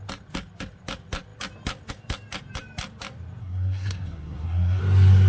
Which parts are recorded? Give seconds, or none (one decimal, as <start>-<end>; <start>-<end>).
0.0-3.4; 4.8-5.3